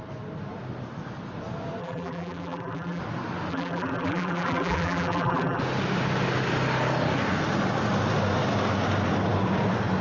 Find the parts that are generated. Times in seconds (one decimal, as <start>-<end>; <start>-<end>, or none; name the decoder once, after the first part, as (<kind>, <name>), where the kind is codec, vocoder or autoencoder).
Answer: 1.8-3.0 (vocoder, BigVGAN v2); 3.5-5.6